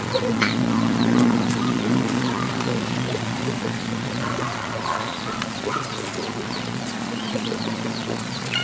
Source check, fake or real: fake